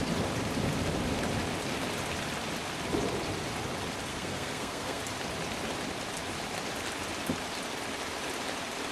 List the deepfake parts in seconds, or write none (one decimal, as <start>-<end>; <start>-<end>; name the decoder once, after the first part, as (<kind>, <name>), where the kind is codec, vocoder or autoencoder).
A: 4.1-5.0 (codec, SNAC)